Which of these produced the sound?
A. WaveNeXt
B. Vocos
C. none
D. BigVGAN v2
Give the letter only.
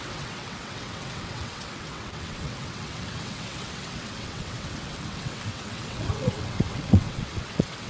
A